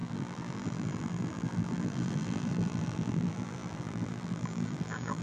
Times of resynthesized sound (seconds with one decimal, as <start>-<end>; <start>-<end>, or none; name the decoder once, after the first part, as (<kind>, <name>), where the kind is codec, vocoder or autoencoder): 0.0-5.2 (vocoder, BigVGAN v2)